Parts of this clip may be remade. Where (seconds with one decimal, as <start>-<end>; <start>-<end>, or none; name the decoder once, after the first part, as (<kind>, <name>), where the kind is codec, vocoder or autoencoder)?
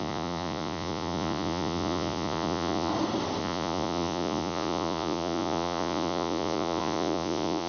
0.0-2.9 (vocoder, Vocos); 3.4-7.7